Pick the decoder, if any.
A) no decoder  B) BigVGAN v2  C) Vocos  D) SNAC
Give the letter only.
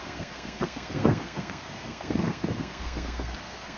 D